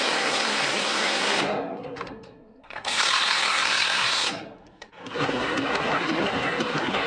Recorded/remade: remade